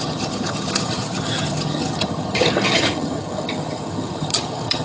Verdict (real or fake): fake